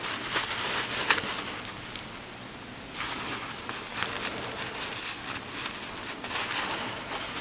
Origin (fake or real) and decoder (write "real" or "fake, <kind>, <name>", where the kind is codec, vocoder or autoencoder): real